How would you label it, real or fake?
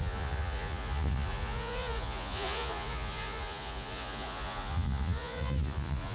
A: fake